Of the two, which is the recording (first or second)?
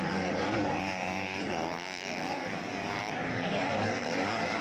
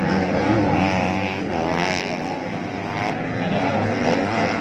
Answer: second